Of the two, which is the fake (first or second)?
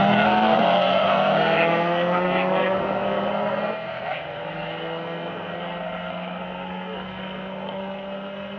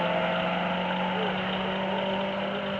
first